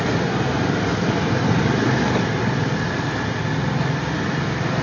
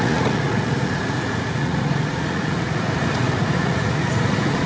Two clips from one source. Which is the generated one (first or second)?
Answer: second